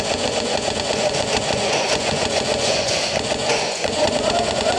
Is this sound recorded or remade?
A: remade